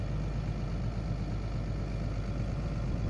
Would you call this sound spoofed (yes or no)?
no